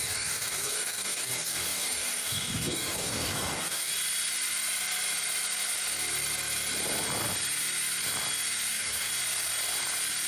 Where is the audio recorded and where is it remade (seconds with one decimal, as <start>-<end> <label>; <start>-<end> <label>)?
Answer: 0.0-3.9 remade; 3.9-8.7 recorded; 8.7-9.1 remade; 9.1-10.3 recorded